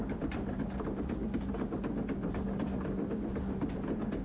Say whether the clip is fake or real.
real